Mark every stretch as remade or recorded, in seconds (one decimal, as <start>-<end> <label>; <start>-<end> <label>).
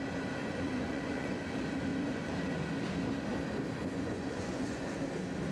0.0-0.4 recorded; 0.4-1.4 remade; 1.4-1.9 recorded; 1.9-2.7 remade; 2.7-3.8 recorded; 3.8-4.9 remade; 4.9-5.5 recorded